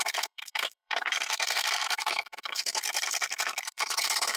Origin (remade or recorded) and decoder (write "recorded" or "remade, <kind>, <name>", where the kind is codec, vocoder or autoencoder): remade, codec, SNAC